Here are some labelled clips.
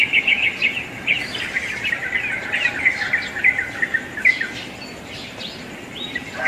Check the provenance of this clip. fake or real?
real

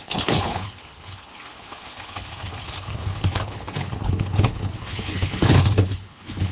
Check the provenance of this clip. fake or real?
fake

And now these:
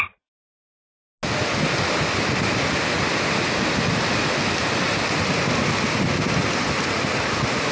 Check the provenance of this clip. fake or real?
real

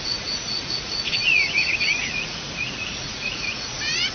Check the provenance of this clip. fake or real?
fake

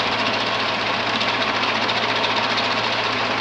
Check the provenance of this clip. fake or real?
real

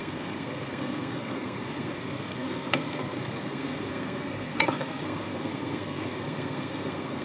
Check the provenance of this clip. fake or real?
fake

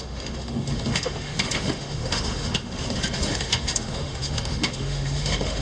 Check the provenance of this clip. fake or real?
fake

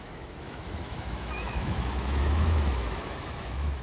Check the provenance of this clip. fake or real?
fake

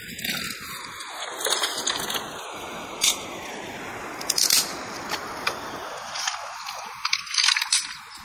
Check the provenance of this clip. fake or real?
real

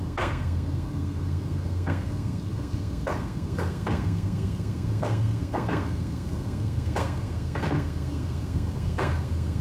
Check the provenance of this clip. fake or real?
fake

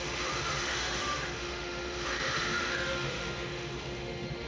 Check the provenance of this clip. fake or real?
fake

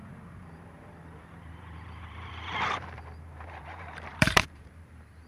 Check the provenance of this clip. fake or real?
fake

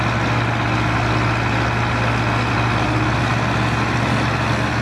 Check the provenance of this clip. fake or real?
real